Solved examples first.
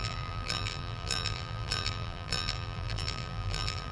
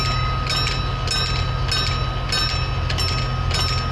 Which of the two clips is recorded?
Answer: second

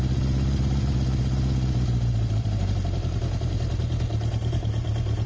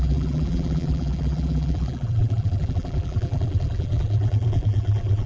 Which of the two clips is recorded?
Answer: first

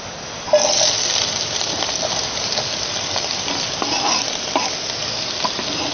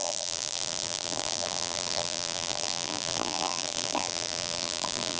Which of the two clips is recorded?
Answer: first